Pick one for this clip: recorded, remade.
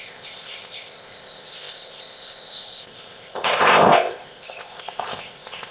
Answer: remade